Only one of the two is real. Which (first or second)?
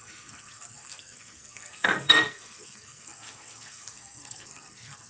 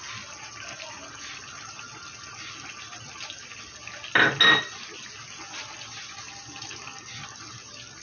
second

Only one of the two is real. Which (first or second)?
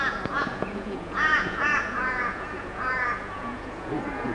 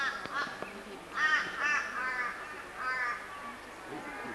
second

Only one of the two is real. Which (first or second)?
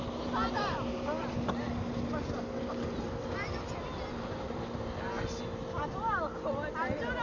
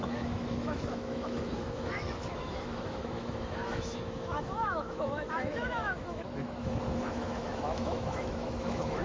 first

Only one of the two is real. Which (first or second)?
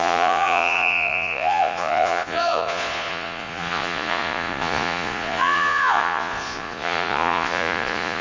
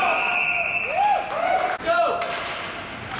second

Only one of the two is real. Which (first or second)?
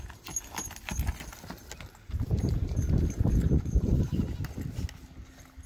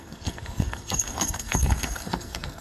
first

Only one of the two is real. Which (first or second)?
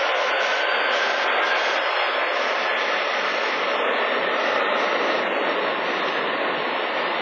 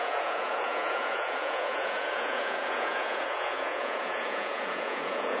first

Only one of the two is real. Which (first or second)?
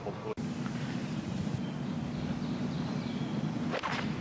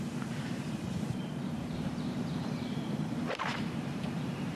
first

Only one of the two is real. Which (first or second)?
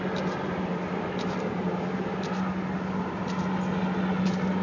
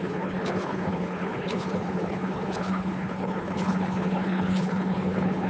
first